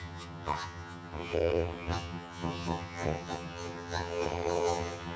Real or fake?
fake